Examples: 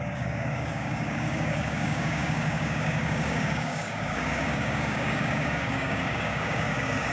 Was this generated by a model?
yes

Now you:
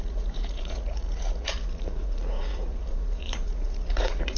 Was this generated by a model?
yes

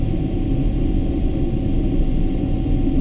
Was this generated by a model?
no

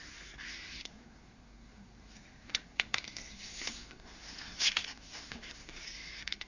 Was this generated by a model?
yes